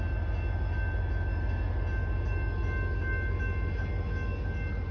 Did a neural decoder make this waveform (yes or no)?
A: no